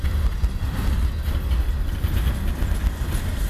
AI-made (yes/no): no